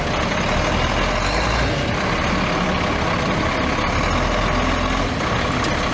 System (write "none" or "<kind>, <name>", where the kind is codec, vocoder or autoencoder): none